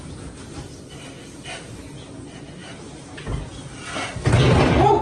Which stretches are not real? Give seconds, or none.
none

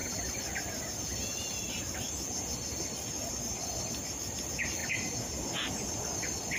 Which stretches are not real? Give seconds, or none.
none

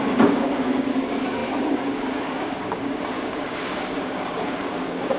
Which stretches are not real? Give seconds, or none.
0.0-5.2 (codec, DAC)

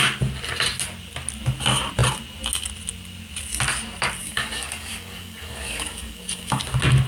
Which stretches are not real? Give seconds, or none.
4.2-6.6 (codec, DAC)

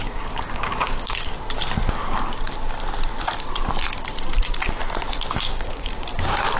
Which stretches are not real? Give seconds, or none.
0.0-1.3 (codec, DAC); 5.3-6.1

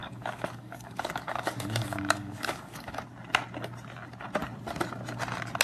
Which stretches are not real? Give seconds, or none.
0.0-3.0 (codec, DAC)